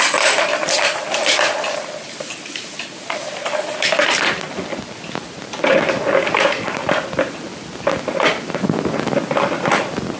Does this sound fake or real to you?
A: real